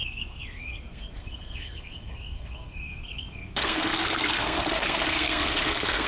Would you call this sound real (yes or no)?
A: no